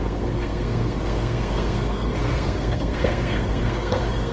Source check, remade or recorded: remade